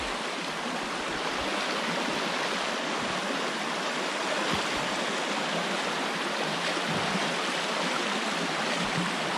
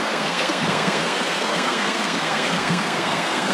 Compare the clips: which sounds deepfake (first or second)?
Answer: second